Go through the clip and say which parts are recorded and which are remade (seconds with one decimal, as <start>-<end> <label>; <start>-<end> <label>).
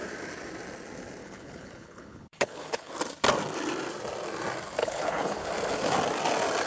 0.0-1.2 recorded; 1.2-2.9 remade; 2.9-4.8 recorded; 4.8-5.5 remade; 5.5-6.7 recorded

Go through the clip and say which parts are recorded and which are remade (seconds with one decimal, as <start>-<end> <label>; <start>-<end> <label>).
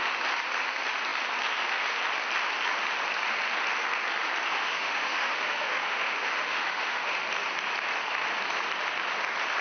0.0-4.5 recorded; 4.5-7.1 remade; 7.1-9.6 recorded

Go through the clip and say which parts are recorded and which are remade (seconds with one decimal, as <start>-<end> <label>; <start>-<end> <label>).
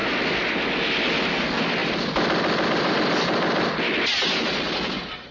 0.0-5.3 recorded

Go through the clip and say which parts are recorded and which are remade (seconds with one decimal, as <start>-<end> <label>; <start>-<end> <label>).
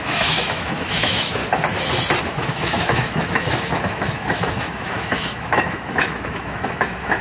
0.0-1.4 remade; 1.4-2.2 recorded; 2.2-7.2 remade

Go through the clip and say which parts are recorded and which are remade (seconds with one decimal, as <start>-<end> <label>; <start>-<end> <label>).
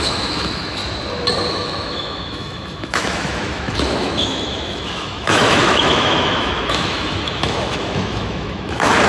0.0-0.8 remade; 0.8-1.5 recorded; 1.5-9.1 remade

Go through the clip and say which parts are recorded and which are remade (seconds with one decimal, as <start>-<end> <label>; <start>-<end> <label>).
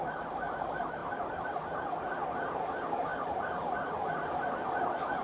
0.0-3.1 recorded; 3.1-3.7 remade; 3.7-5.2 recorded